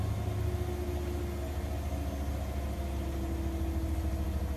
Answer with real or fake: real